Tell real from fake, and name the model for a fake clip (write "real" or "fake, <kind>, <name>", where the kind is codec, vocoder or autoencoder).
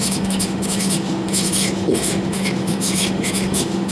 fake, autoencoder, DAC-VAE